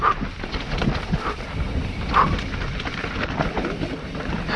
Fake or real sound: real